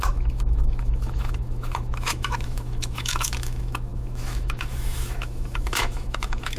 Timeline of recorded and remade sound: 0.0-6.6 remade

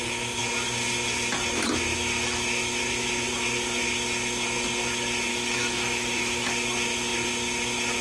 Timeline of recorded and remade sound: 0.0-5.3 recorded; 5.3-6.5 remade; 6.5-8.0 recorded

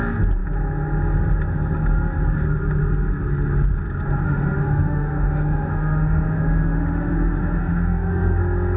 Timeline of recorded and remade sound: 0.0-4.2 recorded; 4.2-8.4 remade; 8.4-8.8 recorded

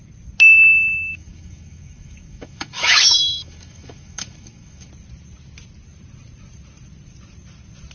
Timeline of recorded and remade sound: 0.0-1.1 recorded; 1.1-4.9 remade; 4.9-7.9 recorded

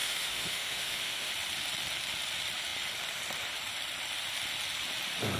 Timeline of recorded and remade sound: 0.0-1.3 remade; 1.3-5.4 recorded

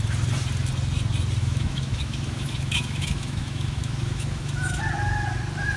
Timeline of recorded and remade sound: 0.0-1.4 recorded; 1.4-4.8 remade; 4.8-5.8 recorded